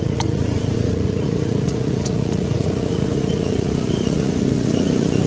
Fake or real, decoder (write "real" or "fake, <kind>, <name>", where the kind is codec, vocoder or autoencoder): fake, vocoder, Vocos